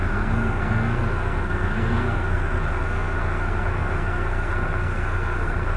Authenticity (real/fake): fake